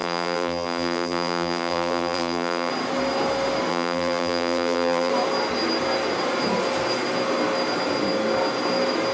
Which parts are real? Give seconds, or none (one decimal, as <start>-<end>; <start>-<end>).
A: 2.7-3.7; 5.1-9.1